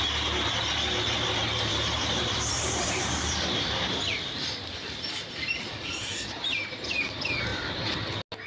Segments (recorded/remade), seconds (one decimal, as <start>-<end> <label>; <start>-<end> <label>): 0.0-1.7 recorded; 1.7-5.9 remade; 5.9-8.5 recorded